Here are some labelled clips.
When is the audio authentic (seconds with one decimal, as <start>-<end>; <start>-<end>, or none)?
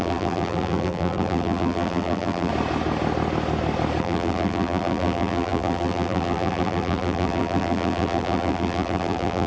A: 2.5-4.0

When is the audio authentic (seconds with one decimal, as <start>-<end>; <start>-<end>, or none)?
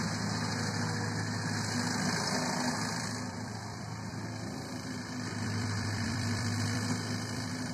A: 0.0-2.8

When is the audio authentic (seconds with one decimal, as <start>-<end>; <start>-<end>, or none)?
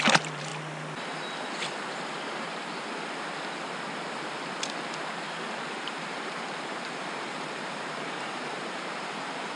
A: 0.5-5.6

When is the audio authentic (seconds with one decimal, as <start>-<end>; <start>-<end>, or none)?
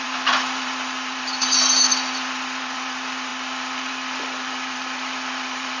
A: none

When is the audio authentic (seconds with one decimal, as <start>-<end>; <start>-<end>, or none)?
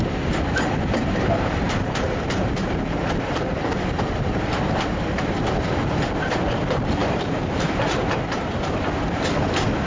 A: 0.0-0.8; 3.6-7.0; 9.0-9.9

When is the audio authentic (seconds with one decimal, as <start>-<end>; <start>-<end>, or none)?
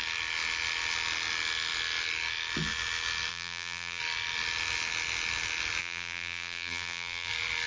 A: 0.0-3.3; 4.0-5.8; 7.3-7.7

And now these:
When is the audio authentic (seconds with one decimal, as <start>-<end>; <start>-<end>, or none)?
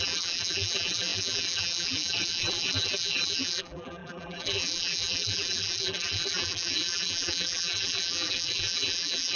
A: none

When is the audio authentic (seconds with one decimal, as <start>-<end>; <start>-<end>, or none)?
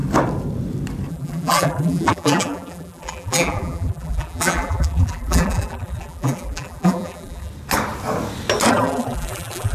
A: 0.0-1.1; 7.5-8.7